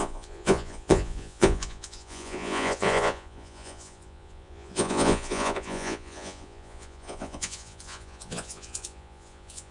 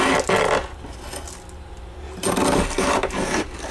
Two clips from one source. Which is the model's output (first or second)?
first